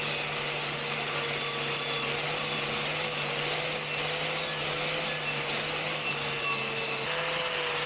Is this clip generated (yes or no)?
no